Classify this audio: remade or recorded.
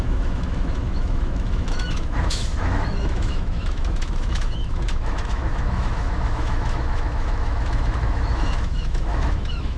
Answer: remade